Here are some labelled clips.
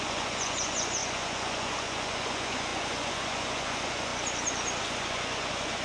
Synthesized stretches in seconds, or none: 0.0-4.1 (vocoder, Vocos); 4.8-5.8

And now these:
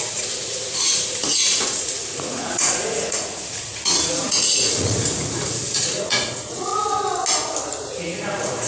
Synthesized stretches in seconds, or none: 0.0-6.7 (vocoder, Vocos); 7.8-8.7

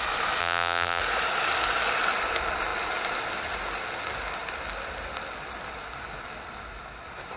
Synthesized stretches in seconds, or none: 0.4-1.0 (vocoder, BigVGAN v2)

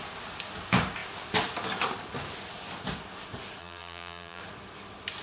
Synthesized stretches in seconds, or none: 3.6-4.4 (vocoder, BigVGAN v2)

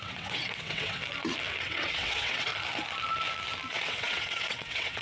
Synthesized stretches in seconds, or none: 0.0-1.0 (vocoder, WaveNeXt); 1.6-2.5; 3.7-5.0

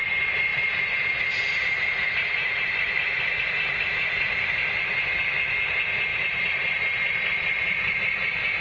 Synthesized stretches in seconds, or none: 0.5-4.4 (vocoder, BigVGAN v2); 6.1-8.0

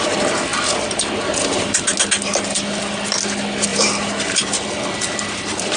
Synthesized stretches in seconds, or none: 3.7-4.6 (vocoder, BigVGAN v2)